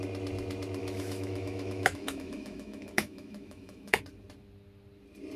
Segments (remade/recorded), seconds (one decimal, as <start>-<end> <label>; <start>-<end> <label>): 0.0-0.8 recorded; 0.8-4.0 remade; 4.0-5.4 recorded